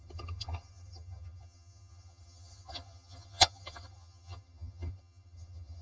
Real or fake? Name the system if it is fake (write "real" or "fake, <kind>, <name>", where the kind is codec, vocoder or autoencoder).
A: fake, vocoder, HiFi-GAN